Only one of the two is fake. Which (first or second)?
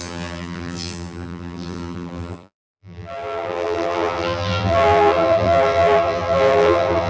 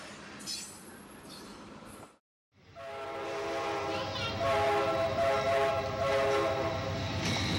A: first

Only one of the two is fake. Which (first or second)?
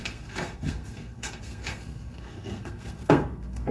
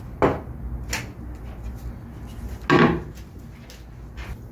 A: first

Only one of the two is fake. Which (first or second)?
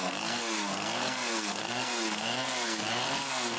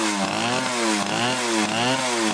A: first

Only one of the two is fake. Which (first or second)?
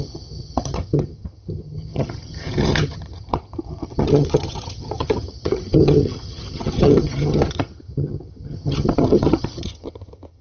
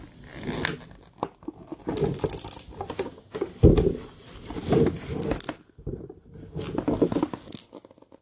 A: first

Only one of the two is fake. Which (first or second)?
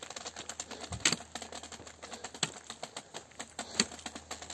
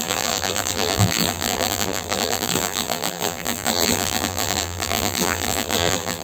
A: second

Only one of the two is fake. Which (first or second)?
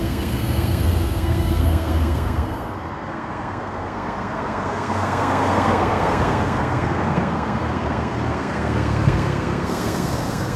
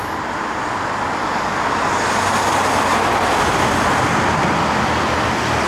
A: first